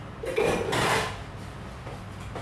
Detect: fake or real real